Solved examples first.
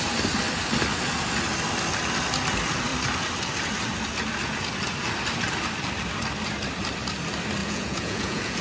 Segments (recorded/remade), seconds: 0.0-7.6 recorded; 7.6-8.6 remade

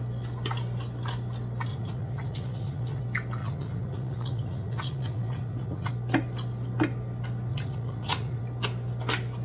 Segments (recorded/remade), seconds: 0.0-1.7 recorded; 1.7-3.0 remade; 3.0-3.4 recorded; 3.4-5.9 remade; 5.9-7.5 recorded; 7.5-8.4 remade; 8.4-9.4 recorded

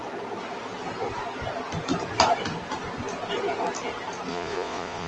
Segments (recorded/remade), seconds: 0.0-4.3 recorded; 4.3-5.1 remade

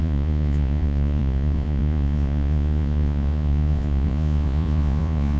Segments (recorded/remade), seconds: 0.0-5.4 remade

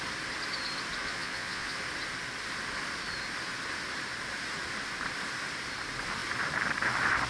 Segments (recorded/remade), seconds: 0.0-1.0 recorded; 1.0-1.8 remade; 1.8-7.3 recorded

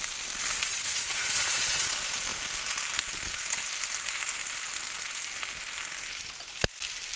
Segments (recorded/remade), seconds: 0.0-0.7 recorded; 0.7-1.9 remade; 1.9-7.2 recorded

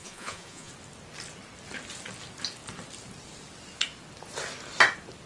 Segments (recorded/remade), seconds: 0.0-0.7 remade; 0.7-5.3 recorded